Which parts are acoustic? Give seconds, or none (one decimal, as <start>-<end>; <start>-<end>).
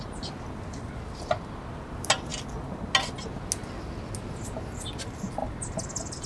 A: 0.0-6.3